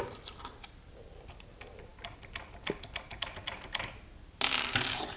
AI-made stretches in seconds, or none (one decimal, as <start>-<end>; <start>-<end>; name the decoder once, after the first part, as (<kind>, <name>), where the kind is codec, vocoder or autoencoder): none